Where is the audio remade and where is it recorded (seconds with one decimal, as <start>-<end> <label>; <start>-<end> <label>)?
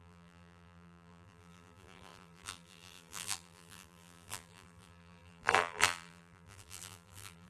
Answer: 0.0-7.5 remade